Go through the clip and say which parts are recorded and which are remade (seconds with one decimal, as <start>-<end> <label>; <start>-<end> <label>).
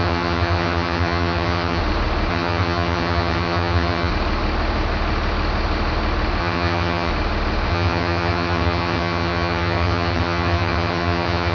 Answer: 0.0-1.8 remade; 1.8-2.3 recorded; 2.3-4.1 remade; 4.1-6.4 recorded; 6.4-7.1 remade; 7.1-7.7 recorded; 7.7-11.5 remade